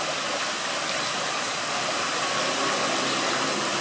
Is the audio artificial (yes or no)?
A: no